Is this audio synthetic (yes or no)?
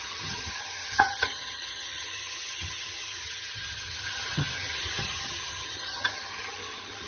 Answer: yes